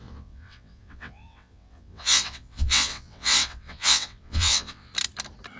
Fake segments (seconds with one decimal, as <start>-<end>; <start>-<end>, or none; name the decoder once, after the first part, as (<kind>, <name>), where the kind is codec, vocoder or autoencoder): 0.0-4.9 (vocoder, WaveNeXt)